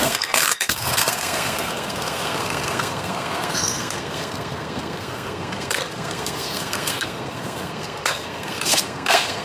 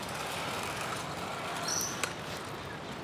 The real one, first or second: second